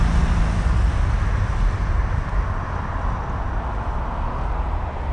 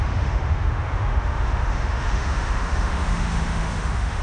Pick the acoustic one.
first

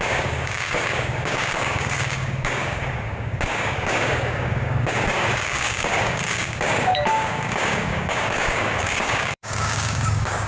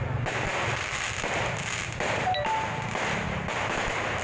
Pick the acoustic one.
second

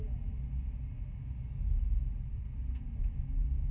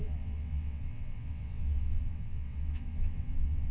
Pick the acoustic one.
first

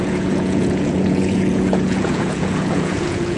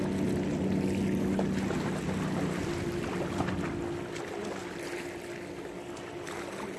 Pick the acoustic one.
second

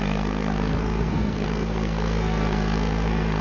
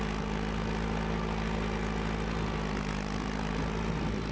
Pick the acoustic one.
second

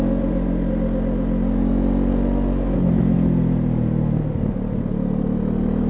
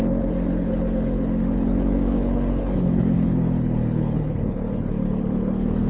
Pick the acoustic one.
first